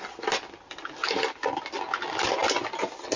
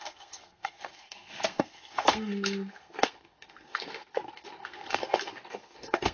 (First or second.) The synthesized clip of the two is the second